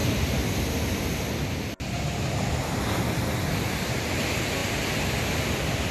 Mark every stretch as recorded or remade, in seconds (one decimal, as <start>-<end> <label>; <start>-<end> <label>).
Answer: 0.0-5.9 recorded